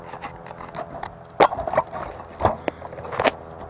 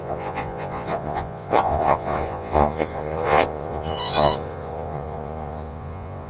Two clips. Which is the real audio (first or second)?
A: first